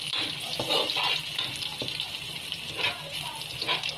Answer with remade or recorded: recorded